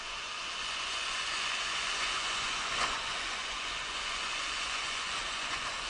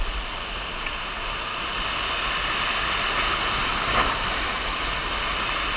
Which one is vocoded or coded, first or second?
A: first